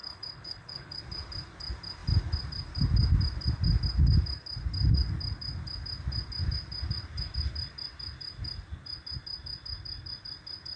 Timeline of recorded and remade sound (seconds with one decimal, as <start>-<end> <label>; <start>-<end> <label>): 0.0-1.0 remade; 1.0-10.8 recorded